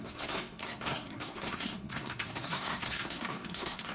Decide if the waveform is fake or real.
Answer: fake